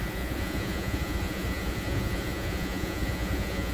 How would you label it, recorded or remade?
remade